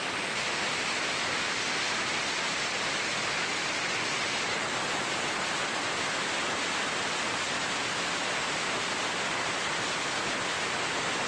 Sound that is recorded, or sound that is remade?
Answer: recorded